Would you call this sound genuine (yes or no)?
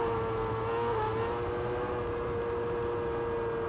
yes